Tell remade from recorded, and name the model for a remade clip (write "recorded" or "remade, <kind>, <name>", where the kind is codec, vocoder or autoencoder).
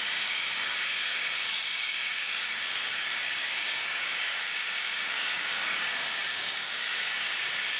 remade, codec, DAC